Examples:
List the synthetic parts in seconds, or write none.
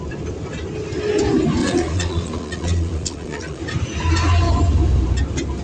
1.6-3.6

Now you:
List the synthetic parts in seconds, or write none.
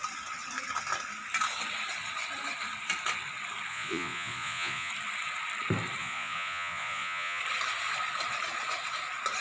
3.7-4.9; 6.0-7.4